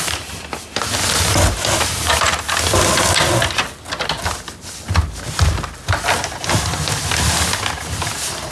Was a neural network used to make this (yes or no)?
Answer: no